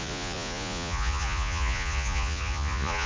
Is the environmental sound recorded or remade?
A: remade